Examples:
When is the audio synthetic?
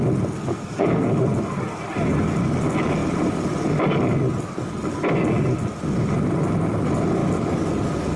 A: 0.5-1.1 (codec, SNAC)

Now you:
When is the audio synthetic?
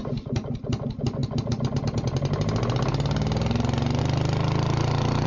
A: none